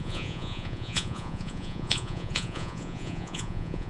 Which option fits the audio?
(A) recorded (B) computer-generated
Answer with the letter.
B